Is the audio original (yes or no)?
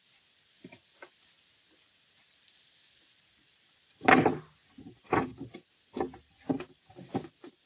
yes